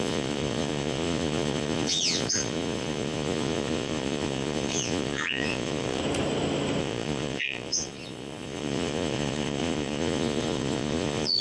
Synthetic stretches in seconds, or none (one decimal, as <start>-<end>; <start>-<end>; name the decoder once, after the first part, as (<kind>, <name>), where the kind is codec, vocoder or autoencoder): 0.0-6.0 (vocoder, Vocos); 6.8-11.4